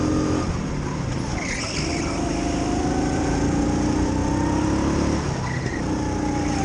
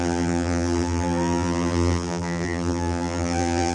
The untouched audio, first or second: first